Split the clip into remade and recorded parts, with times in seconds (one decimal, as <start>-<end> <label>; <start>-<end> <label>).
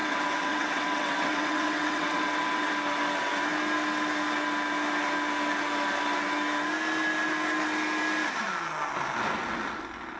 0.0-2.7 remade; 2.7-10.2 recorded